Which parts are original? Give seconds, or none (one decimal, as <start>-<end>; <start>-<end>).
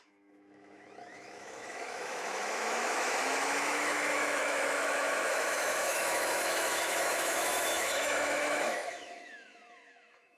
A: none